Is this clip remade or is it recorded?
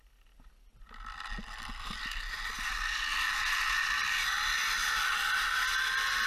recorded